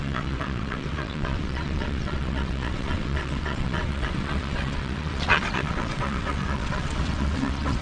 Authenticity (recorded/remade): remade